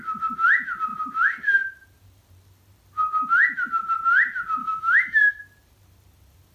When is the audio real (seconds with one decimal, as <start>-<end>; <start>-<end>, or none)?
0.0-4.6; 5.4-6.5